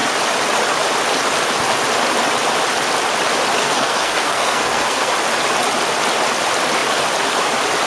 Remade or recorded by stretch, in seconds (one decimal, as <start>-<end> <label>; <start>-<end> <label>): 0.0-3.6 recorded; 3.6-5.1 remade; 5.1-7.9 recorded